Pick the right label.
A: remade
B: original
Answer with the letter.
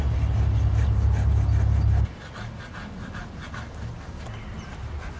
B